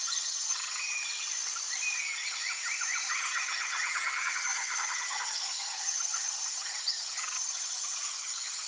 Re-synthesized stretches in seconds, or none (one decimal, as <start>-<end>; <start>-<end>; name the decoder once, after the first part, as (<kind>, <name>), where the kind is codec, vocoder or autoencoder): 0.0-1.0 (vocoder, HiFi-GAN); 3.1-8.7